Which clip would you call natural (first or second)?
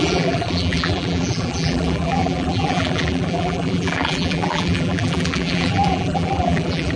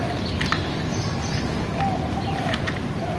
second